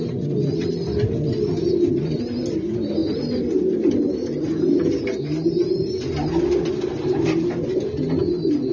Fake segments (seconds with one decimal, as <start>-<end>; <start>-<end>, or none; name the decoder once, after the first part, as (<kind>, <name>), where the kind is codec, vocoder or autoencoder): none